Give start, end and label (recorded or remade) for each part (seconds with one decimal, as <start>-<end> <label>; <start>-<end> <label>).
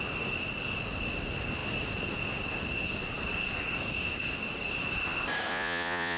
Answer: 0.0-5.5 recorded; 5.5-6.2 remade